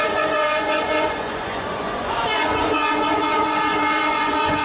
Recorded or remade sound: remade